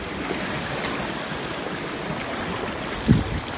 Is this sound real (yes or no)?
yes